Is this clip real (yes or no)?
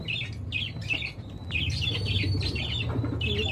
no